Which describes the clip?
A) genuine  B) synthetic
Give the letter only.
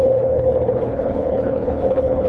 B